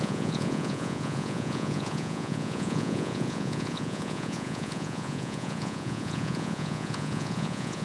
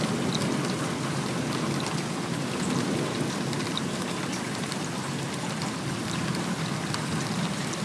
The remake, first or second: first